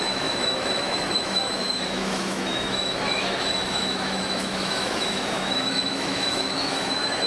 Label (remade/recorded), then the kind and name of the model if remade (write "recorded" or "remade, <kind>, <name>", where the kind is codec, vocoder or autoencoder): remade, autoencoder, DAC-VAE